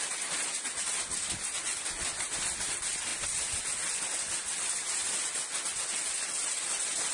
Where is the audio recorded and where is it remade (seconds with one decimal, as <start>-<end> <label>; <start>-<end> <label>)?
0.0-7.1 recorded

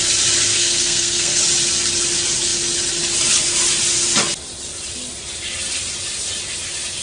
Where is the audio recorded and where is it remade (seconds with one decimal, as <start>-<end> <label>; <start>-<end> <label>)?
0.0-0.5 recorded; 0.5-1.4 remade; 1.4-7.0 recorded

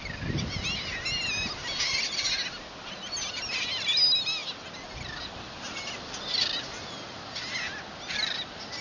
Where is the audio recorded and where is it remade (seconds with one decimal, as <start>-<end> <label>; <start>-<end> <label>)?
0.0-8.8 recorded

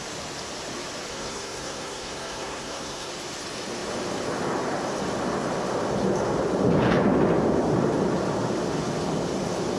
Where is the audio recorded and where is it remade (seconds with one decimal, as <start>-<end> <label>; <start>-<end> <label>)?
0.0-1.1 recorded; 1.1-3.1 remade; 3.1-9.8 recorded

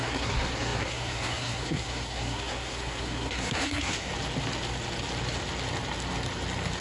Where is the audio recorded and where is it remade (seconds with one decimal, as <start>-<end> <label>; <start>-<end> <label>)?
0.0-4.1 remade; 4.1-6.8 recorded

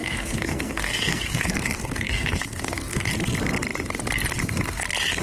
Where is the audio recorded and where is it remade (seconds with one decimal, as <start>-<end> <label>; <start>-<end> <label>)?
0.0-3.1 remade; 3.1-5.2 recorded

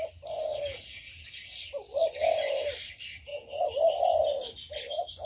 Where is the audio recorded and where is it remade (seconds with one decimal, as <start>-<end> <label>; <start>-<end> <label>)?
0.0-5.3 recorded

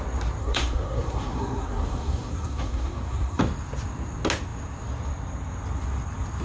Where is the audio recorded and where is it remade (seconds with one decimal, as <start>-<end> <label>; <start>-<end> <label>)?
0.0-0.4 recorded; 0.4-3.4 remade; 3.4-6.4 recorded